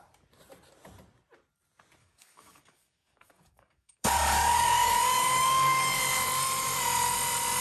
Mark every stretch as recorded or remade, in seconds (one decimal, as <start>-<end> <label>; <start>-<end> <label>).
0.0-2.0 recorded; 2.0-6.0 remade; 6.0-7.6 recorded